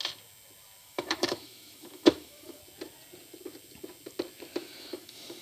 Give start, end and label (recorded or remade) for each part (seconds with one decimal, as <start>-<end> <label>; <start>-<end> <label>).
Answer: 0.0-0.8 recorded; 0.8-2.6 remade; 2.6-4.6 recorded; 4.6-5.4 remade